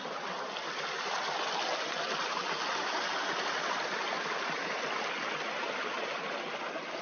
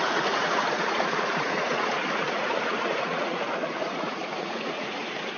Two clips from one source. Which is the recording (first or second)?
first